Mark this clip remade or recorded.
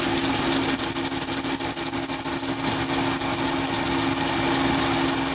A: recorded